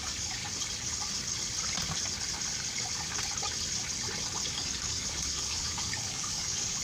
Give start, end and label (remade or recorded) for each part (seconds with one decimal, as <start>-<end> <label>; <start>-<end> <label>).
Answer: 0.0-0.4 remade; 0.4-4.5 recorded; 4.5-6.8 remade